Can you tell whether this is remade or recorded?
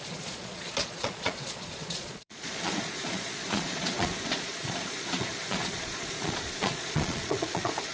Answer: remade